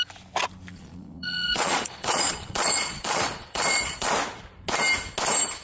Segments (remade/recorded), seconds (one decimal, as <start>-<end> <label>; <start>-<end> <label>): 0.0-0.7 recorded; 0.7-4.1 remade; 4.1-5.6 recorded